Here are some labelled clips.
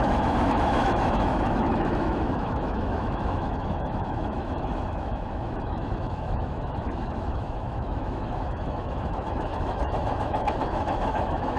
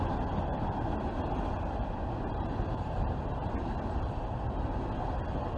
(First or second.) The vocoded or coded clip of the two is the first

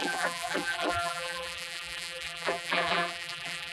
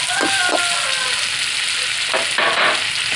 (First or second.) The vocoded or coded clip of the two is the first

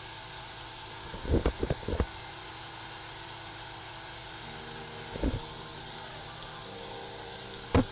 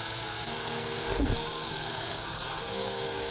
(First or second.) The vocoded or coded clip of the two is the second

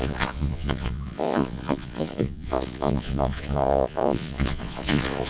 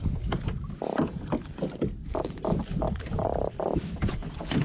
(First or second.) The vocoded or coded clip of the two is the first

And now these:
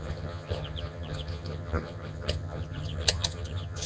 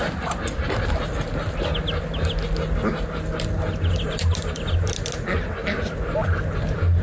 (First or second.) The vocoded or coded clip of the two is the first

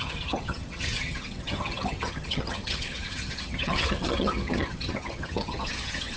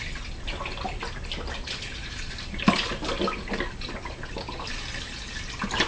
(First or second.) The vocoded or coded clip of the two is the first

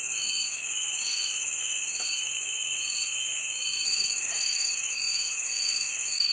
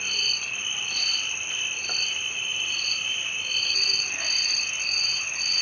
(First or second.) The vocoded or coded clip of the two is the first